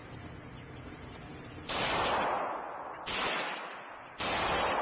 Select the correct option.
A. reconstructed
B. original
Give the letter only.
B